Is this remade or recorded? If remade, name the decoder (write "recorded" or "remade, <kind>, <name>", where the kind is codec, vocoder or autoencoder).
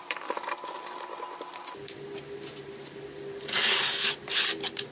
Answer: recorded